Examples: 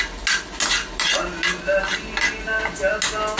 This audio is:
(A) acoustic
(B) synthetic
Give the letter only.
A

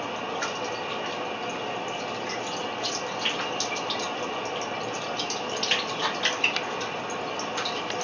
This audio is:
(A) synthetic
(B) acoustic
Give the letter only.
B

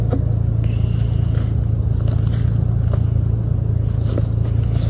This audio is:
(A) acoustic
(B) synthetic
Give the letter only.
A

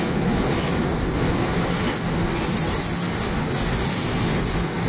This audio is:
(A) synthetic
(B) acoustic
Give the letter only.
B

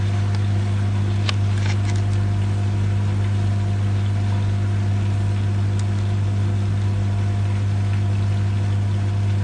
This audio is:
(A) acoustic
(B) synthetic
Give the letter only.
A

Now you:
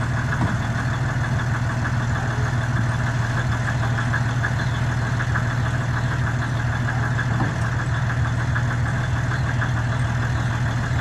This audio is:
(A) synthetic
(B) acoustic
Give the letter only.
B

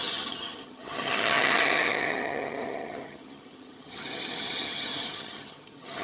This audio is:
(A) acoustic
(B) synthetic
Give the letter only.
B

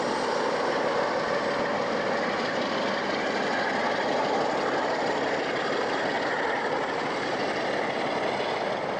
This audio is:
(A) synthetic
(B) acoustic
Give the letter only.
B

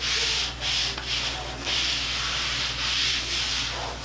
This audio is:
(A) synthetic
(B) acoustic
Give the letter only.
B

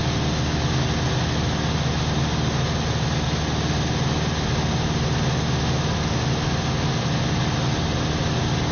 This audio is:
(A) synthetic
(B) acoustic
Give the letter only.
B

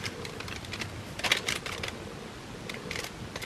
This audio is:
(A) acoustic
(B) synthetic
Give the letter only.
A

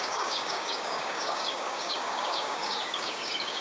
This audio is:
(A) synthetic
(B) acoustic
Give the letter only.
A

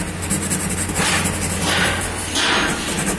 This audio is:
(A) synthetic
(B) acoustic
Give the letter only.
B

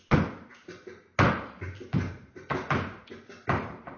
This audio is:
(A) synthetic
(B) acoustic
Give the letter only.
B